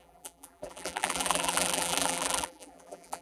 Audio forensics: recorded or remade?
remade